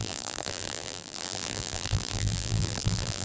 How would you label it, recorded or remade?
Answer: remade